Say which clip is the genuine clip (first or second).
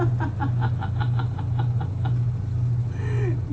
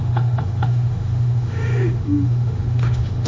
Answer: first